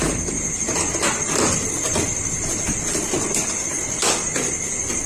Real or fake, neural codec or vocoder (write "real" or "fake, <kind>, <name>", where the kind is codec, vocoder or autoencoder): real